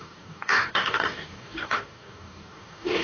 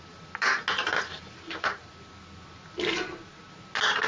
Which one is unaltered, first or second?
second